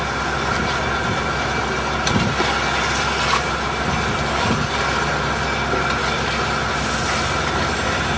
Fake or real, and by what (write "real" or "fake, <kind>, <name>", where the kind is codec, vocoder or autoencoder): real